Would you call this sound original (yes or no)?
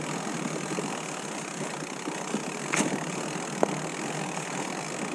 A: yes